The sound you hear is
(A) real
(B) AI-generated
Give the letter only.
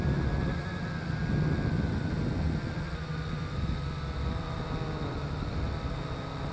A